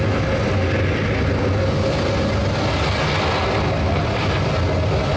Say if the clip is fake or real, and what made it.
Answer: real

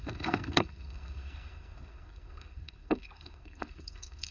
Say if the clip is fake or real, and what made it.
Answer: fake, codec, SNAC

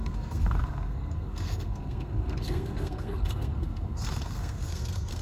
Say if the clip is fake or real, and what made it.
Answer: fake, codec, SNAC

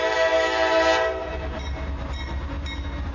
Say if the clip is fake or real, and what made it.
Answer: real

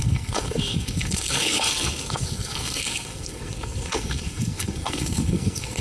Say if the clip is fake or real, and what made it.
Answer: fake, codec, SNAC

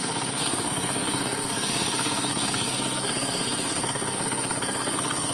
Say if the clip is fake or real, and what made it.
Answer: fake, codec, SNAC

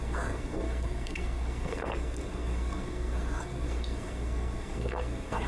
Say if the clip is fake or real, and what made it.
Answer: fake, codec, SNAC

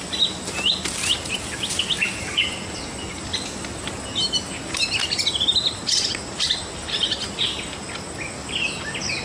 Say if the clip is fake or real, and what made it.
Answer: real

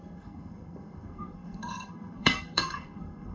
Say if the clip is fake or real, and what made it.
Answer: fake, codec, SNAC